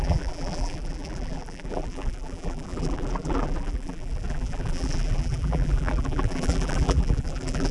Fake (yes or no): yes